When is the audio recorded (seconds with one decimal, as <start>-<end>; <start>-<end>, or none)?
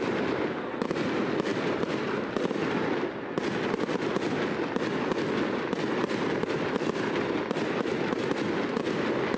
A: 0.0-9.4